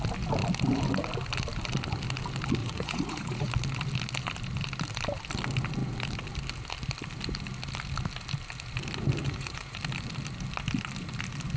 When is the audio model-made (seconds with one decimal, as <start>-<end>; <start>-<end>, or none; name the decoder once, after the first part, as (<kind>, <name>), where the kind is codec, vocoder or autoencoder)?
2.6-3.5 (vocoder, Vocos); 9.2-9.8